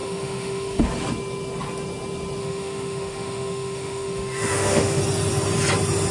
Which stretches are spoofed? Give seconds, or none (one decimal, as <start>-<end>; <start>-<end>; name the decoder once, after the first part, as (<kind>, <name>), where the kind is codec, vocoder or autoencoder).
0.0-0.8 (autoencoder, DAC-VAE); 2.4-5.0